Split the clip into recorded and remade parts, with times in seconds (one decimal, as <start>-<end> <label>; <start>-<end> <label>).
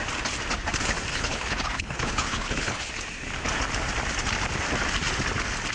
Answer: 0.0-1.1 recorded; 1.1-2.9 remade; 2.9-5.7 recorded